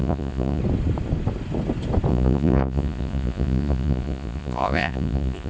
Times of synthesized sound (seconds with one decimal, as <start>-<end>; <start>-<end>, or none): 0.0-0.6; 2.1-5.5